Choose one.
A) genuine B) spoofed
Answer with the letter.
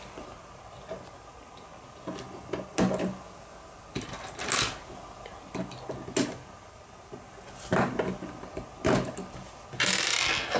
A